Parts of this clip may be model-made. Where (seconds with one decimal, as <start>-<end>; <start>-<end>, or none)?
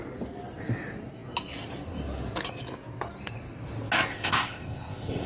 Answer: 4.1-5.3